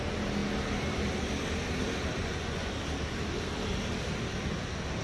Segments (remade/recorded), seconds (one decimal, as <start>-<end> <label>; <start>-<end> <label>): 0.0-2.2 recorded; 2.2-2.7 remade; 2.7-5.0 recorded